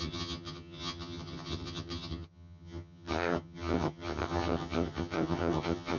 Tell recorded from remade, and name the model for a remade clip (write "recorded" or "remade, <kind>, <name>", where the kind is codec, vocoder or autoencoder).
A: remade, vocoder, HiFi-GAN